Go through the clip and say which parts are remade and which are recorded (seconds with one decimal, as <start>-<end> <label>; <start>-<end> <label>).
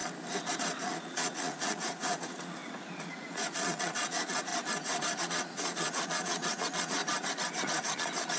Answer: 0.0-0.6 recorded; 0.6-4.5 remade; 4.5-5.2 recorded; 5.2-7.0 remade; 7.0-7.6 recorded; 7.6-8.4 remade